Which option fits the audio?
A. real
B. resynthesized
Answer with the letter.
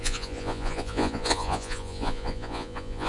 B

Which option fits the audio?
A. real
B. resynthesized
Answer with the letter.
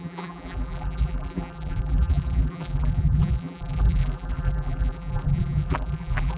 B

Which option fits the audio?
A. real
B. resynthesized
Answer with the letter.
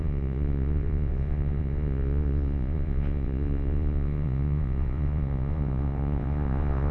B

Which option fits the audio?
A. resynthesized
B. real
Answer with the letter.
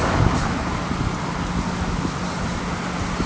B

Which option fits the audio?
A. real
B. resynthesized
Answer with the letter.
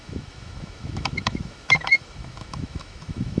B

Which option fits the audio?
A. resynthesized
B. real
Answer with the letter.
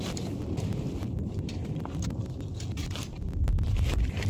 B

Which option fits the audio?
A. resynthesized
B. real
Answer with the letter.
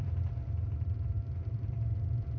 A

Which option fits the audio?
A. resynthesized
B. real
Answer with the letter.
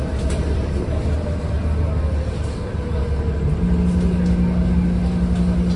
B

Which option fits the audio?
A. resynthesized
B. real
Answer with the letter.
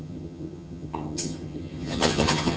A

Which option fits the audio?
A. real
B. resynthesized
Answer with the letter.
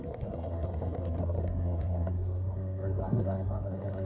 B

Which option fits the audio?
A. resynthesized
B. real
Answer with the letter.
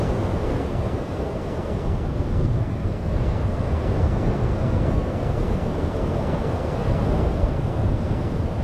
A